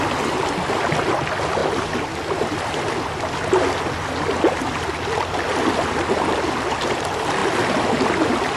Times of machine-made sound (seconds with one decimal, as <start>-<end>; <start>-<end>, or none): none